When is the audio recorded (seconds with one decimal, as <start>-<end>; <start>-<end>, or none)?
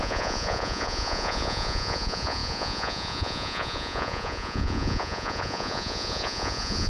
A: none